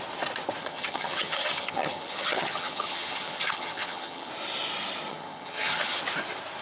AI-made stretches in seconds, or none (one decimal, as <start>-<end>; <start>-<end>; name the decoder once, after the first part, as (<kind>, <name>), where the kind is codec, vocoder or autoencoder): 0.6-4.3 (vocoder, HiFi-GAN); 5.1-6.0